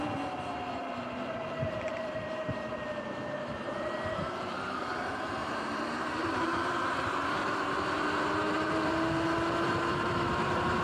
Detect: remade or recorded remade